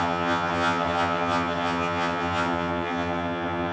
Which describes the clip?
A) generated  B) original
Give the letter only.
A